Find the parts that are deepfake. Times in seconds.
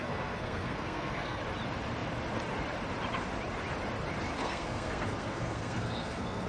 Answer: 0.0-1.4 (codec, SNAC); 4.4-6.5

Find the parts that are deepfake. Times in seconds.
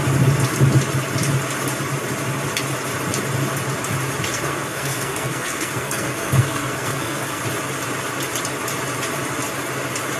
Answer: 4.3-7.4 (codec, SNAC)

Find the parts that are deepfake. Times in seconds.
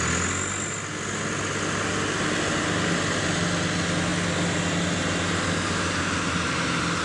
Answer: none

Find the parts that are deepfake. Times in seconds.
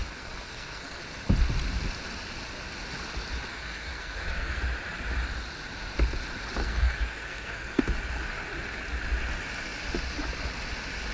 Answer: 0.0-1.0 (codec, SNAC); 3.5-4.6; 6.6-7.8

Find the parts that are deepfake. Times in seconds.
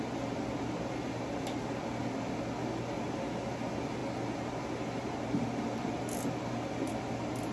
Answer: none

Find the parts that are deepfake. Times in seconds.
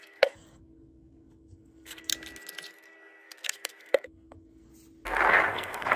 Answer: 0.0-2.1 (codec, SNAC); 2.7-4.7; 5.5-6.0